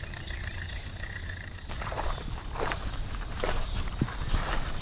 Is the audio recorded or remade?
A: remade